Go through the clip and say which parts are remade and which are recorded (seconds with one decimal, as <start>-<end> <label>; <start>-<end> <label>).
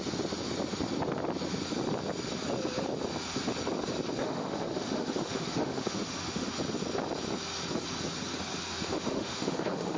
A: 0.0-4.2 recorded; 4.2-6.5 remade; 6.5-8.7 recorded; 8.7-10.0 remade